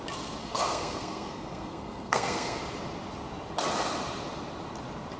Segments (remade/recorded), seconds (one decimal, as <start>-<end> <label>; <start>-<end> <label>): 0.0-0.4 recorded; 0.4-2.6 remade; 2.6-5.2 recorded